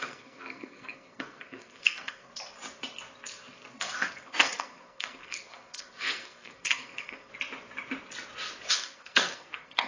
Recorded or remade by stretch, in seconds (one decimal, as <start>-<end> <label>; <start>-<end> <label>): 0.0-2.3 remade; 2.3-3.7 recorded; 3.7-7.3 remade; 7.3-8.7 recorded; 8.7-9.9 remade